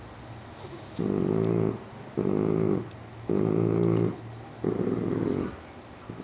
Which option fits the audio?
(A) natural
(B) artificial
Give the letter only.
A